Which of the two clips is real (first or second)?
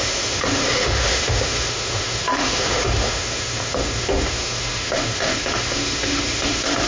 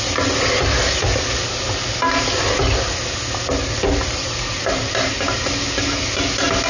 second